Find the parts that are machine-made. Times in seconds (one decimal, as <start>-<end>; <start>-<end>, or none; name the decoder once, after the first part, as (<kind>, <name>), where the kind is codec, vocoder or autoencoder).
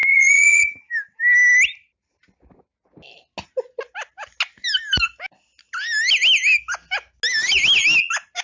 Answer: 0.0-0.9 (vocoder, Vocos)